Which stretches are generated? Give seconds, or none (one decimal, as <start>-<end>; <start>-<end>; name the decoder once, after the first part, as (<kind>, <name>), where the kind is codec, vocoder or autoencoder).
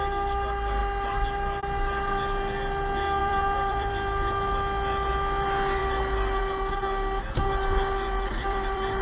3.2-3.9 (vocoder, BigVGAN v2); 7.9-9.0